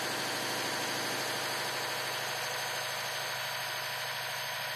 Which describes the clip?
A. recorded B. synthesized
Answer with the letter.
A